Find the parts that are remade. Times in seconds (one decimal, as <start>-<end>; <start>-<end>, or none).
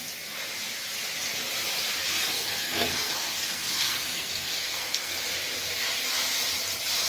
2.1-5.2